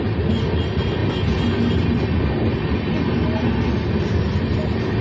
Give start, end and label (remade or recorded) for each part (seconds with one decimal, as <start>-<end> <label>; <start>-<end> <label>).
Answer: 0.0-5.0 recorded